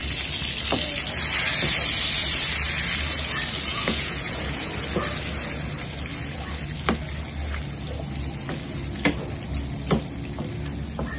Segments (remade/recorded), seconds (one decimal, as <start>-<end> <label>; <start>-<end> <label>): 0.0-3.7 recorded; 3.7-4.7 remade; 4.7-11.2 recorded

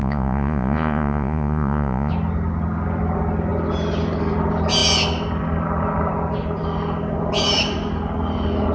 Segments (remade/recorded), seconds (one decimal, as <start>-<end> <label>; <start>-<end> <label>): 0.0-2.1 remade; 2.1-8.7 recorded

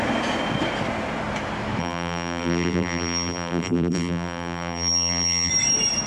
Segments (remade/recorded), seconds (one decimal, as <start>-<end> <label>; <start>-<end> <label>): 0.0-1.8 recorded; 1.8-5.5 remade; 5.5-6.1 recorded

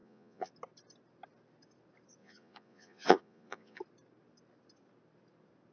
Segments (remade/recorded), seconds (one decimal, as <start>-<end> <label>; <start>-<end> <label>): 0.0-0.5 remade; 0.5-2.2 recorded; 2.2-3.8 remade; 3.8-5.7 recorded

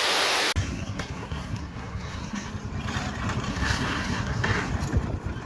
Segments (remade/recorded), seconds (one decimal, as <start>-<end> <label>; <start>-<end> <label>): 0.0-0.6 recorded; 0.6-2.5 remade; 2.5-3.5 recorded; 3.5-4.7 remade; 4.7-5.5 recorded